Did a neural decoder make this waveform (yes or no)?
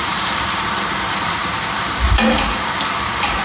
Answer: yes